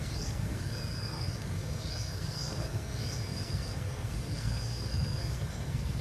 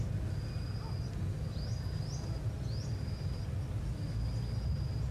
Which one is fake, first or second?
first